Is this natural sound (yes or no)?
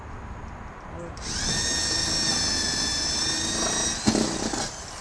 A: yes